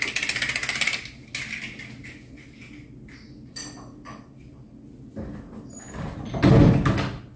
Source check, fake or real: real